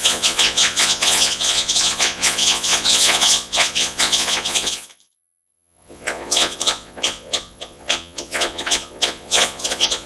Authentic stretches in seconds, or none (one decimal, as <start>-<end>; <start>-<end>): none